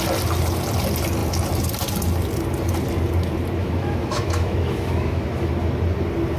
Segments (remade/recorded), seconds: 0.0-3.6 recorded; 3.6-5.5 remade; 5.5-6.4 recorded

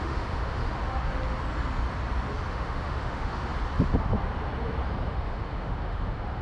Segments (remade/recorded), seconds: 0.0-0.6 remade; 0.6-2.5 recorded; 2.5-3.5 remade; 3.5-5.1 recorded; 5.1-6.4 remade

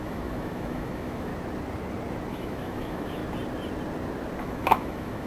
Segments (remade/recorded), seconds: 0.0-1.3 remade; 1.3-2.3 recorded; 2.3-3.2 remade; 3.2-4.4 recorded; 4.4-5.3 remade